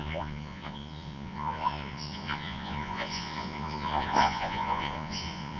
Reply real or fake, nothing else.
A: fake